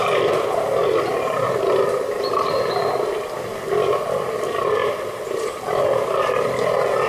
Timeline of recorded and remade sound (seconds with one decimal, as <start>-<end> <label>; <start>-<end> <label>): 0.0-7.1 recorded